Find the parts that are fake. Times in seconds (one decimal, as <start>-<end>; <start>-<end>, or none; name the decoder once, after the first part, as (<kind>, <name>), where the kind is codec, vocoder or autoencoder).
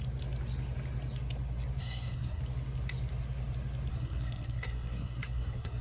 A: 1.8-2.4 (codec, SNAC); 3.9-5.8